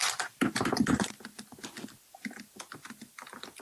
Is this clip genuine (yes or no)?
no